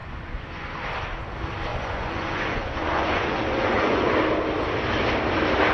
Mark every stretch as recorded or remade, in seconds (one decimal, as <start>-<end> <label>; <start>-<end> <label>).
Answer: 0.0-0.7 remade; 0.7-1.7 recorded; 1.7-4.1 remade; 4.1-5.7 recorded

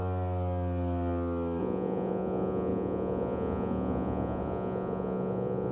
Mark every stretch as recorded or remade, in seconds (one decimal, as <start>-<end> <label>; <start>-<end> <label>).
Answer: 0.0-1.6 recorded; 1.6-5.7 remade

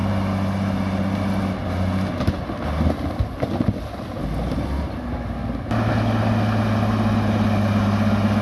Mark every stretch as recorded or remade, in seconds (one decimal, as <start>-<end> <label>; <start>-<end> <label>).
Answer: 0.0-8.4 recorded